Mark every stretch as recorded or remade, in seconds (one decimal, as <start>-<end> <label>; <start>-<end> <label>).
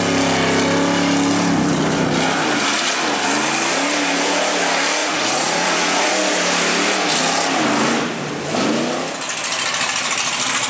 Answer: 0.0-5.0 recorded; 5.0-6.1 remade; 6.1-10.7 recorded